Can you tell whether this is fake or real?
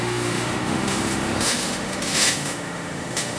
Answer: fake